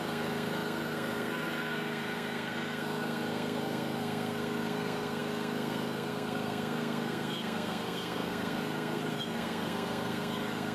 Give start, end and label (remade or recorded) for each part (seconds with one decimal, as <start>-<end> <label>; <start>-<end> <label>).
0.0-10.7 remade